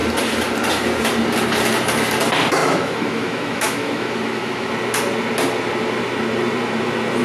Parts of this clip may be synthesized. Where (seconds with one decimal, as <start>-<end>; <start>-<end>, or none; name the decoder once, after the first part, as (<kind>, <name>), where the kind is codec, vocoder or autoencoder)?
2.6-4.7 (autoencoder, DAC-VAE)